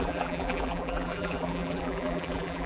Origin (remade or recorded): remade